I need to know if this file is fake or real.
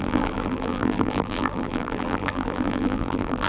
fake